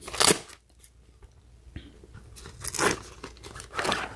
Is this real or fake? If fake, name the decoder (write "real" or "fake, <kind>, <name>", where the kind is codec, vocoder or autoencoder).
real